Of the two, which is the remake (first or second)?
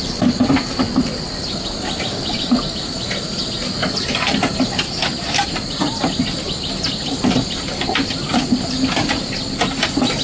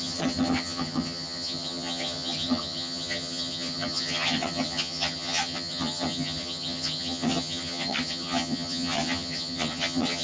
second